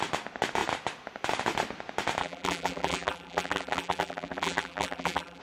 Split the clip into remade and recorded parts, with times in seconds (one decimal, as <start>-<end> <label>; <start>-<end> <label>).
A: 0.0-2.2 recorded; 2.2-5.4 remade